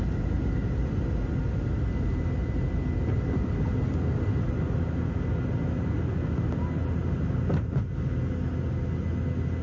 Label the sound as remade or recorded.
recorded